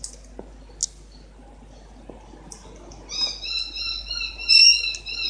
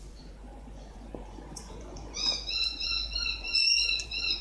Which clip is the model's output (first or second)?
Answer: second